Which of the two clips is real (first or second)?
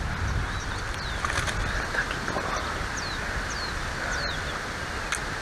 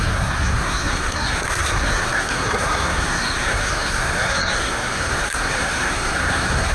first